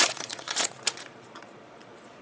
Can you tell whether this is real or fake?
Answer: fake